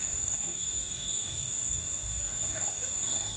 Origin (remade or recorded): remade